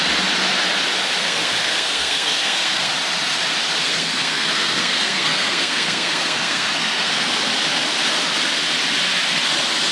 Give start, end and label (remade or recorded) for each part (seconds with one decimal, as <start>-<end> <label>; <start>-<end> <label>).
0.0-1.2 recorded; 1.2-2.9 remade; 2.9-3.8 recorded; 3.8-7.1 remade; 7.1-9.9 recorded